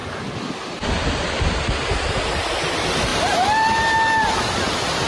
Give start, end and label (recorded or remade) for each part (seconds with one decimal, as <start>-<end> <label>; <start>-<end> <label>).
0.0-5.1 recorded